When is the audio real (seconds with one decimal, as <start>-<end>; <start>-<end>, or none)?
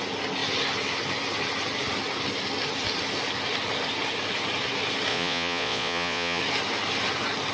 0.0-5.1; 6.4-7.5